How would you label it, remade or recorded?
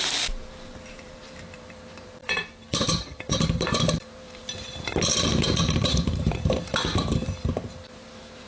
remade